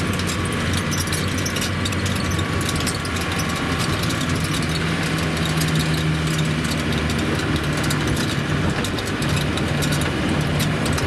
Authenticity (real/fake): real